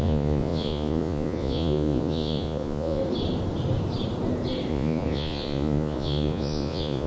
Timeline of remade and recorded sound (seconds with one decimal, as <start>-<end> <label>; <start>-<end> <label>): 0.0-3.0 remade; 3.0-4.7 recorded; 4.7-7.1 remade